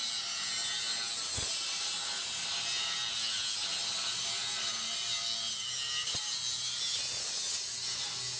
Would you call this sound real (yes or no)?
yes